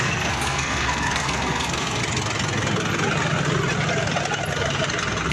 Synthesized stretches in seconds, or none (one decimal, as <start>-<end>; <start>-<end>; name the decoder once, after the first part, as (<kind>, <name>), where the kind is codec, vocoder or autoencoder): 0.0-2.0 (codec, SNAC)